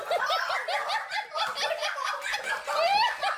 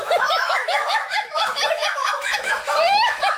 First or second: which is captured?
first